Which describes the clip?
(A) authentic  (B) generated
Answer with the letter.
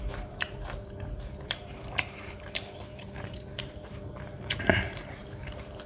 B